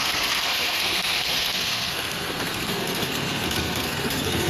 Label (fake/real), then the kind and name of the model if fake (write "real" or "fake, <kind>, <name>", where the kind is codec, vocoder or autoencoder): fake, codec, SNAC